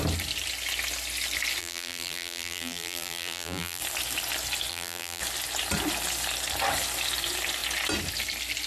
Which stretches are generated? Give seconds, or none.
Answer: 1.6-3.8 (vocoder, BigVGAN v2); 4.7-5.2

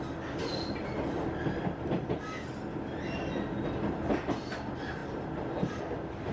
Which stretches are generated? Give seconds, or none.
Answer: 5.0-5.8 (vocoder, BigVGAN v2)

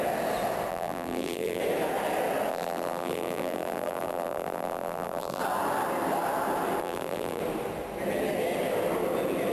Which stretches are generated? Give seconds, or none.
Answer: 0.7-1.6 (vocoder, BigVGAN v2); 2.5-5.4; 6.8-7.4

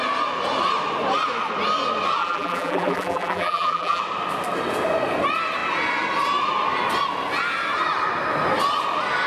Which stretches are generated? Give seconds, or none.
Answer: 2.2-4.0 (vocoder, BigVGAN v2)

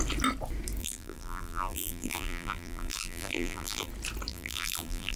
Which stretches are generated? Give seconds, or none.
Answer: 0.8-3.9 (vocoder, BigVGAN v2); 4.3-5.2

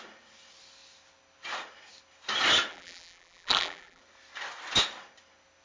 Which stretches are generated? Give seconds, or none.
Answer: 2.7-4.0 (vocoder, BigVGAN v2)

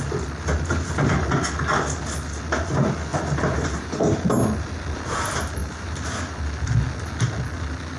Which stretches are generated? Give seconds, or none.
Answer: 3.1-4.1 (vocoder, BigVGAN v2); 5.6-6.4

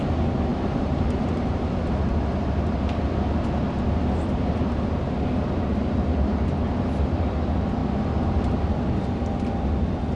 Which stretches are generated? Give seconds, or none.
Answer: 0.5-1.8 (vocoder, BigVGAN v2)